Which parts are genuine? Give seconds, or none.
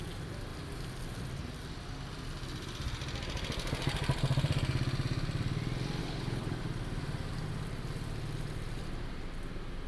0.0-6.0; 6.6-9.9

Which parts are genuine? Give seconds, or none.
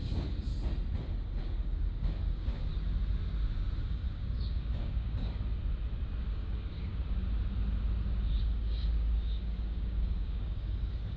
0.5-1.4; 2.7-3.9; 5.2-6.2; 6.9-8.4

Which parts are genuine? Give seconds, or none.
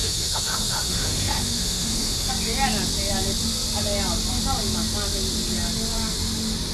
2.3-6.7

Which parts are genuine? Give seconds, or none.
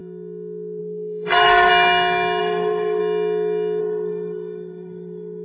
0.0-0.8; 1.7-2.4; 3.0-3.8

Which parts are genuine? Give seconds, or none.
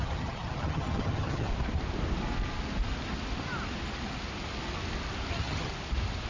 1.5-5.3; 5.7-6.3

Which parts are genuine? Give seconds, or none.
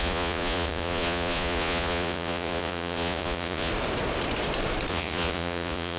3.7-4.9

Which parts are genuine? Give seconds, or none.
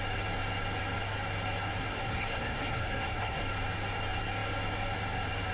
0.0-1.8; 3.4-5.5